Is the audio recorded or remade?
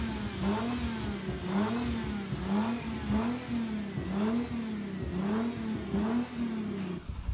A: recorded